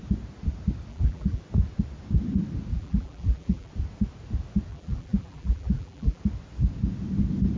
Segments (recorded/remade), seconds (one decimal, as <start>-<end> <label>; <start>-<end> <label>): 0.0-0.9 recorded; 0.9-1.4 remade; 1.4-2.7 recorded; 2.7-3.7 remade; 3.7-4.7 recorded; 4.7-6.2 remade; 6.2-7.6 recorded